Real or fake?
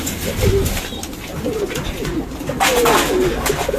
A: real